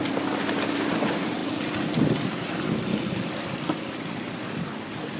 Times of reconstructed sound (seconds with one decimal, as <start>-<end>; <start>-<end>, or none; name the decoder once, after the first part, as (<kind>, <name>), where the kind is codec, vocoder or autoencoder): none